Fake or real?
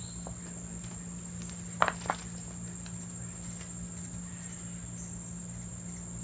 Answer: real